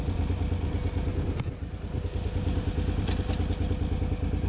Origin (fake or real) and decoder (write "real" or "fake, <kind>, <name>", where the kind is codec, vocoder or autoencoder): real